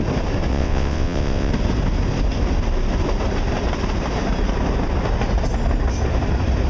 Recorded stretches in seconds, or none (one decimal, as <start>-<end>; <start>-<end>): 0.0-0.5; 1.5-6.7